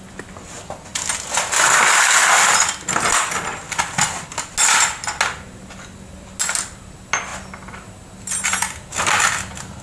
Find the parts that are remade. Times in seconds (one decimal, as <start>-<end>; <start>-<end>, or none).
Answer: none